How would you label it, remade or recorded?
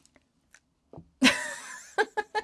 recorded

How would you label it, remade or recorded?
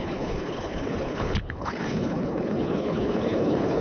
remade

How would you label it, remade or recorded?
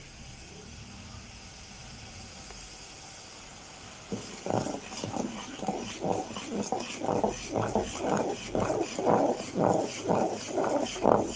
recorded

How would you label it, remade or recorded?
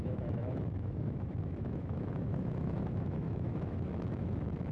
remade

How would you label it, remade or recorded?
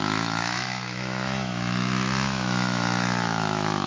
remade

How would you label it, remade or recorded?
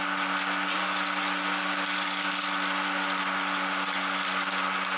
recorded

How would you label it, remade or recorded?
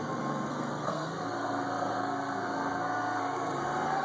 remade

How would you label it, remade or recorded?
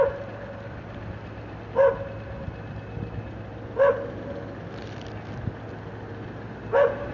recorded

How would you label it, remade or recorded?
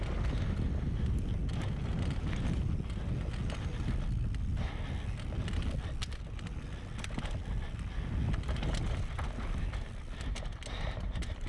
recorded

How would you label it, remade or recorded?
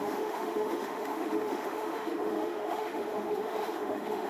remade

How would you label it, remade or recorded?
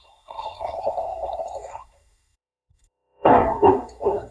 remade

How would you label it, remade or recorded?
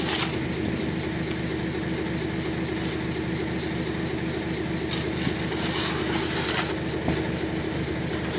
recorded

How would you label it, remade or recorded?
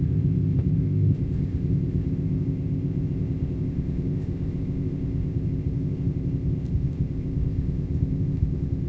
remade